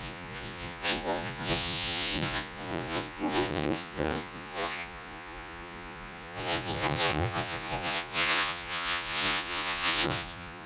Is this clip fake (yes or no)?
yes